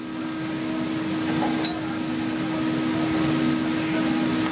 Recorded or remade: recorded